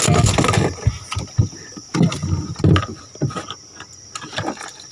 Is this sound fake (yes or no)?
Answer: no